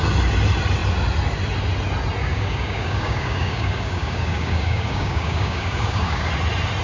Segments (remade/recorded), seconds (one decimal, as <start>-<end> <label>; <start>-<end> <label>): 0.0-2.2 recorded; 2.2-6.3 remade; 6.3-6.8 recorded